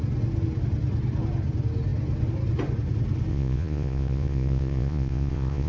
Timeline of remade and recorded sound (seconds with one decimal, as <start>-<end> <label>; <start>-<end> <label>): 0.0-3.3 recorded; 3.3-5.7 remade